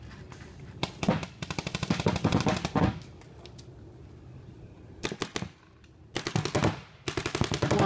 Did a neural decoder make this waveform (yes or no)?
no